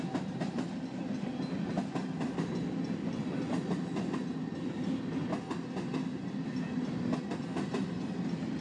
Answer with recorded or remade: recorded